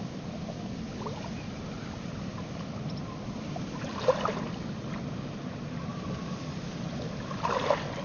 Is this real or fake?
real